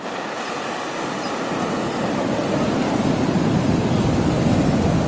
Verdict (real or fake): real